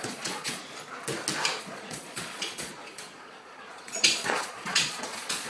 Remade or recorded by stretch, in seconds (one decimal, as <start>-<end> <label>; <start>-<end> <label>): 0.0-0.6 remade; 0.6-1.6 recorded; 1.6-5.5 remade